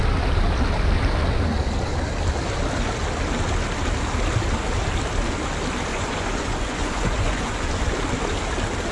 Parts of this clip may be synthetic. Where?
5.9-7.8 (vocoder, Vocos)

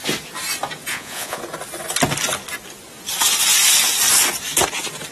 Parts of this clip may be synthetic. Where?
0.9-1.4 (vocoder, Vocos)

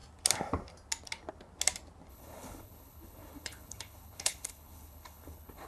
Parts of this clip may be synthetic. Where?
2.1-5.7 (codec, HILCodec)

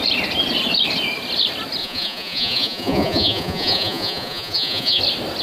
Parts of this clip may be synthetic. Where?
1.8-5.0 (vocoder, Vocos)

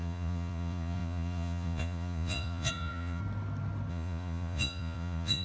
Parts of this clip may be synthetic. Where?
0.0-3.2 (vocoder, Vocos); 3.9-5.4

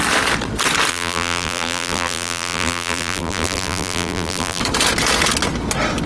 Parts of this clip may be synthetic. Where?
0.9-4.6 (vocoder, BigVGAN v2)